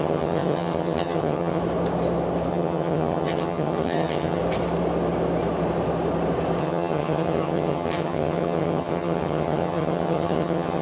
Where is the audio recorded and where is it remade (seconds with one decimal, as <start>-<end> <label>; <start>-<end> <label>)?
0.0-1.6 remade; 1.6-2.5 recorded; 2.5-4.4 remade; 4.4-6.6 recorded; 6.6-10.8 remade